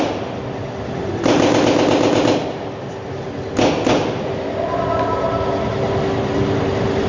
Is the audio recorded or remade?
recorded